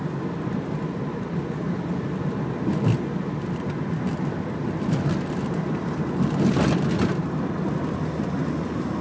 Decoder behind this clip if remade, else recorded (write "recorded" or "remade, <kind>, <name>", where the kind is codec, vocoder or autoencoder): recorded